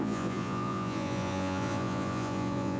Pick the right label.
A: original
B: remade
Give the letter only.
B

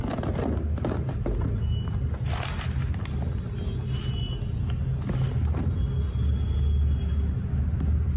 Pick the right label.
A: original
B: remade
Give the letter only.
A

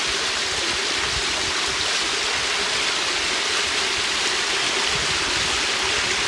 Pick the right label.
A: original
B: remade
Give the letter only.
A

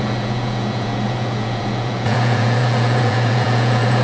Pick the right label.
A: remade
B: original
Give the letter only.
A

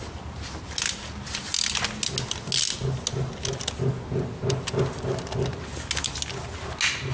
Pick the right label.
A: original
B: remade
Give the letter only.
A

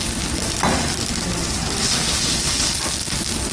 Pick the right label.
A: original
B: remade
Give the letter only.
A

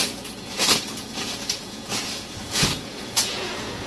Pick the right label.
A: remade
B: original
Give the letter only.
A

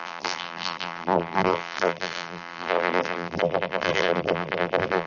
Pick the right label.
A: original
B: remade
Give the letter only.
B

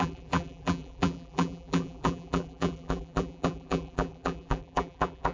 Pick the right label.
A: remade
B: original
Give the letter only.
A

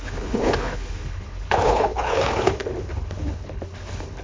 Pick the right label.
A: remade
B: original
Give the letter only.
A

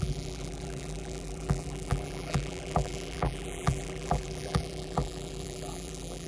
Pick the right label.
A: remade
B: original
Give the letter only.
A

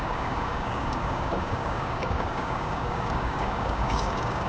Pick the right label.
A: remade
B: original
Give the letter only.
A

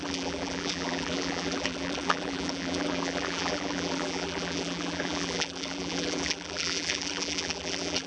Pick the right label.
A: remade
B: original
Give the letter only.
A